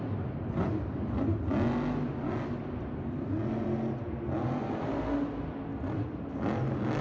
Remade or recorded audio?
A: recorded